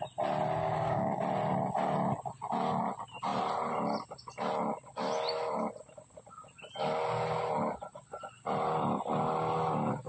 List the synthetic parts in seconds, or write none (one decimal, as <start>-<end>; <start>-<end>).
0.6-1.2